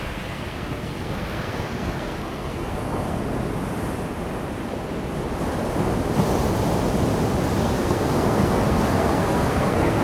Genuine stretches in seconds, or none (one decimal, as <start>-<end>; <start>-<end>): 3.2-7.6